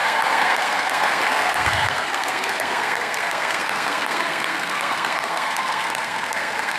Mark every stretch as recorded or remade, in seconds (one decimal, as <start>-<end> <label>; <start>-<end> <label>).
0.0-6.8 remade